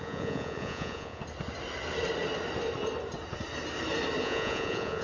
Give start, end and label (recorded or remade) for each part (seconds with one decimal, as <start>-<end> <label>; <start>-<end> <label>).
0.0-1.2 remade; 1.2-4.2 recorded; 4.2-5.0 remade